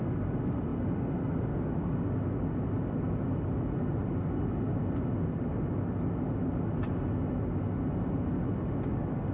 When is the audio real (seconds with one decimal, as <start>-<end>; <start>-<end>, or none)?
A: 0.0-9.3

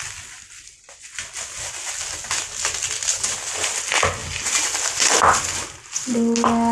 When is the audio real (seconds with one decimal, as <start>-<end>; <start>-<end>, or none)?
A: 0.0-6.7